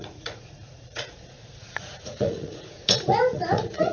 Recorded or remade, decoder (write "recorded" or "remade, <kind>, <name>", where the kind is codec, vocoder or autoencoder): remade, vocoder, Vocos